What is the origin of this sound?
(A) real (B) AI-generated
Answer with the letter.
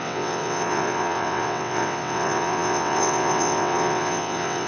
B